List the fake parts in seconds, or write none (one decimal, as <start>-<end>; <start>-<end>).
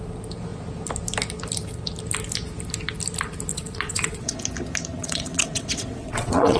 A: 3.5-4.4; 5.0-6.6